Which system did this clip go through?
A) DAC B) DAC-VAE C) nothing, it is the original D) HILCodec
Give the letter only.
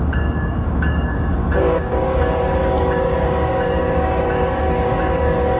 A